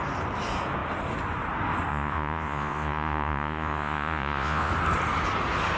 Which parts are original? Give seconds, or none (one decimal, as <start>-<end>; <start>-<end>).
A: 0.0-1.9; 4.7-5.8